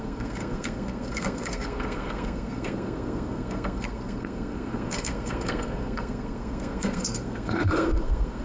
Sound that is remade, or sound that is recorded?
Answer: remade